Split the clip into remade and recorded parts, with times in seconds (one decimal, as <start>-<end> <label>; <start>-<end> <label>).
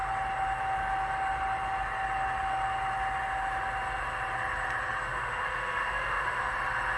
0.0-5.1 recorded; 5.1-6.4 remade; 6.4-7.0 recorded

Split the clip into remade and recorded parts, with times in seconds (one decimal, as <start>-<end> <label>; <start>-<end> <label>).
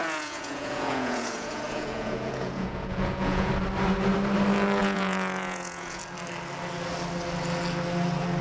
0.0-3.5 remade; 3.5-4.8 recorded; 4.8-6.0 remade; 6.0-8.4 recorded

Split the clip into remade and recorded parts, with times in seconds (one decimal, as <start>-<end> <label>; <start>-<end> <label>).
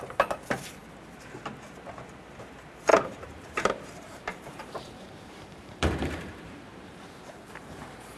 0.0-2.9 recorded; 2.9-8.2 remade